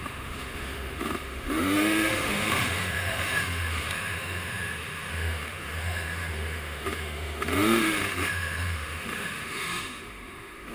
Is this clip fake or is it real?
fake